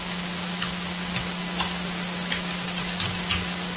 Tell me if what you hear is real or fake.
real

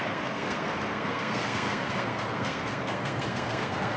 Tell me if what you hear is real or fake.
fake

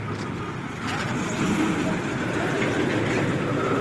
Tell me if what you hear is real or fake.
real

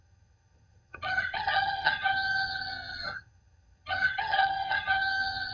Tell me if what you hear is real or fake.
fake